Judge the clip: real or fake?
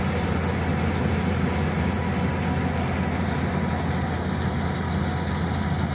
real